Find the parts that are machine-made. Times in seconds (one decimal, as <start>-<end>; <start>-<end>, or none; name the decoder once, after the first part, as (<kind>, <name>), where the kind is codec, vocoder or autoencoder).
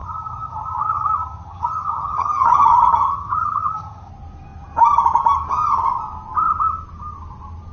0.0-4.1 (vocoder, HiFi-GAN)